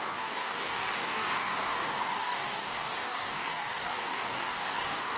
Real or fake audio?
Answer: fake